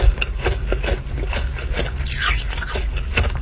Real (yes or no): yes